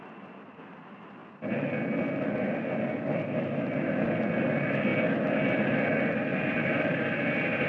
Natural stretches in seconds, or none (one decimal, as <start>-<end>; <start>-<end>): 0.0-6.3